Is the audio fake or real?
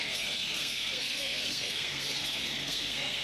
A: fake